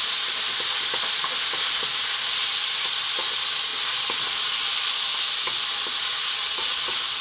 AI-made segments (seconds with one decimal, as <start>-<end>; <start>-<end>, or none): none